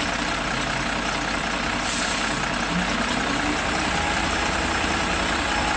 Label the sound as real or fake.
real